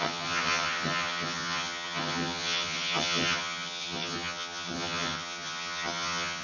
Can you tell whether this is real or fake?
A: fake